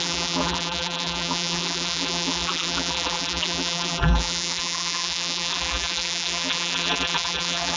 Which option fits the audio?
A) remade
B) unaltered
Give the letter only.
A